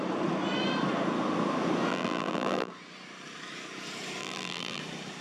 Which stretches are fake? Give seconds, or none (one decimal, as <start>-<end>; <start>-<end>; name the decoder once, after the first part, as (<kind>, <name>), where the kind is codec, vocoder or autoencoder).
1.9-2.7 (vocoder, BigVGAN v2); 4.2-4.8